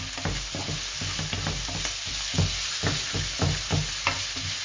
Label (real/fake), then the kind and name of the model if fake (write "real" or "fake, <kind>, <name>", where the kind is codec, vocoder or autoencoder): real